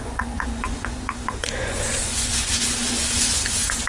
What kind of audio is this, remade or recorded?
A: remade